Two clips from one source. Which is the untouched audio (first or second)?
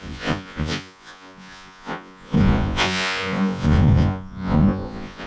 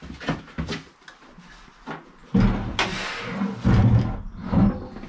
second